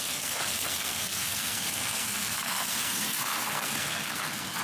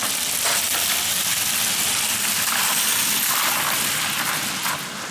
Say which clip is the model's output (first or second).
first